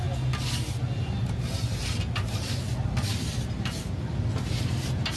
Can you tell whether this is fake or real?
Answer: real